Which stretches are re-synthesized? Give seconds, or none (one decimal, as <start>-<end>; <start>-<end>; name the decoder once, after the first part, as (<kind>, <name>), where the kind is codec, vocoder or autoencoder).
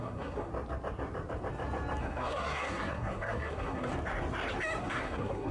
0.0-0.5 (codec, SNAC); 2.0-3.9; 4.8-5.5